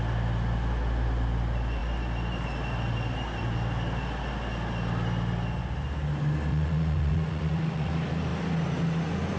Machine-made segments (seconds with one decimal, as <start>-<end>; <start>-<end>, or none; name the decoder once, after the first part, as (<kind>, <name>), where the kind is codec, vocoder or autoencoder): 6.5-7.9 (vocoder, Vocos)